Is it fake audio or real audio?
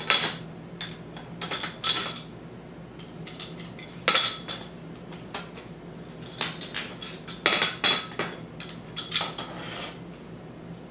real